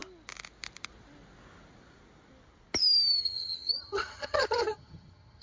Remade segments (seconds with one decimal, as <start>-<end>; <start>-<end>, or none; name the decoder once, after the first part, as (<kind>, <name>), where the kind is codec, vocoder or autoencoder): 3.2-5.4 (vocoder, HiFi-GAN)